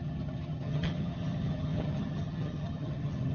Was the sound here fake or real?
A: fake